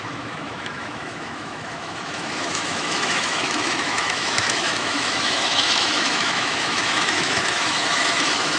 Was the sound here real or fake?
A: fake